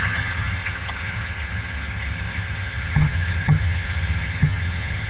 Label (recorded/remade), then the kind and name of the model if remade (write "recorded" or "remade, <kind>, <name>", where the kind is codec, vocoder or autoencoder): remade, vocoder, HiFi-GAN